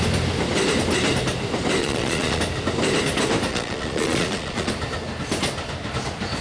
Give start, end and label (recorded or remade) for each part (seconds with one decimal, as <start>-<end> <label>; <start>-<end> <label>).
0.0-1.8 recorded; 1.8-2.4 remade; 2.4-3.5 recorded; 3.5-4.7 remade; 4.7-6.4 recorded

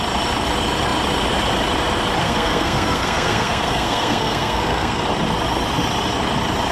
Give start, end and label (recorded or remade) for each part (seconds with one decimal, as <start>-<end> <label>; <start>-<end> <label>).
0.0-2.2 recorded; 2.2-5.0 remade; 5.0-6.7 recorded

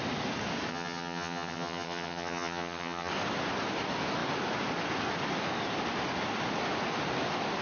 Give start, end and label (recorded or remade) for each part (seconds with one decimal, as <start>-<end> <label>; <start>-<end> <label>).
0.0-0.7 recorded; 0.7-3.1 remade; 3.1-7.6 recorded

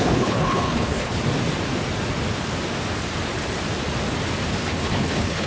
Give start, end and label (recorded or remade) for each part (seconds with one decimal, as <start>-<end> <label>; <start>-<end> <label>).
0.0-1.2 remade; 1.2-4.5 recorded; 4.5-5.5 remade

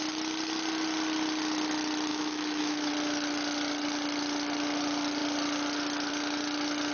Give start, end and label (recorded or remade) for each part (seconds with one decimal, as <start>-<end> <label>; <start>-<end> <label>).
0.0-2.1 recorded; 2.1-2.9 remade; 2.9-6.9 recorded